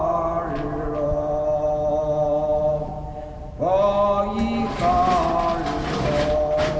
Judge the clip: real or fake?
real